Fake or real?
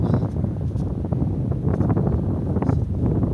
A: real